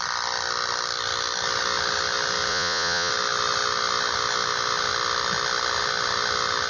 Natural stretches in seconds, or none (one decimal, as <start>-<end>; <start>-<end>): 0.0-2.5; 3.1-6.7